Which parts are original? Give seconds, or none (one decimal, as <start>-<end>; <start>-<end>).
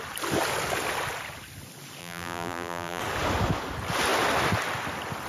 0.0-2.0; 3.0-5.3